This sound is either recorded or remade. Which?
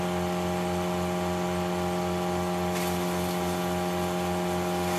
recorded